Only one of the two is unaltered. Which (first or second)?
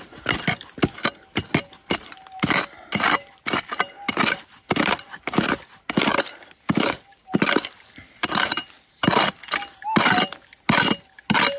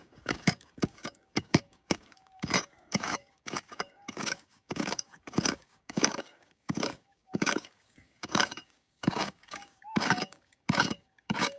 first